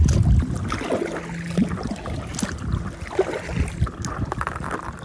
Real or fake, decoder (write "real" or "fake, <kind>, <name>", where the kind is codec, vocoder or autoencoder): real